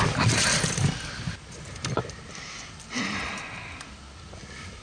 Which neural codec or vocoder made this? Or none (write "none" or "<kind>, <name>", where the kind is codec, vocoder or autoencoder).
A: none